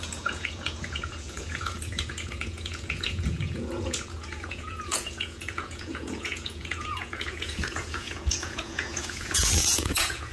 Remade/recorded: remade